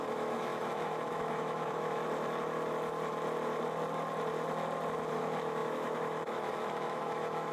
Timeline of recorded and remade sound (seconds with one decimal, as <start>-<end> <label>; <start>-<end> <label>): 0.0-2.0 remade; 2.0-5.1 recorded; 5.1-7.5 remade